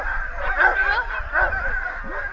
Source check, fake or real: fake